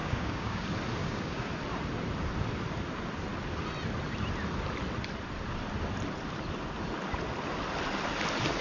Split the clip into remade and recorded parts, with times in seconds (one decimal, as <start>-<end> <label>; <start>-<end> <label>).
0.0-0.6 remade; 0.6-1.0 recorded; 1.0-1.5 remade; 1.5-8.6 recorded